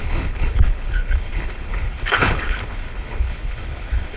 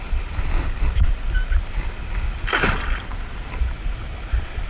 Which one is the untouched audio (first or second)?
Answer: second